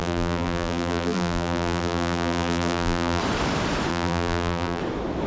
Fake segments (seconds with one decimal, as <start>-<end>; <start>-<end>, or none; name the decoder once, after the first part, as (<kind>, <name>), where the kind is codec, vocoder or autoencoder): 0.0-3.2 (vocoder, BigVGAN v2); 3.9-4.8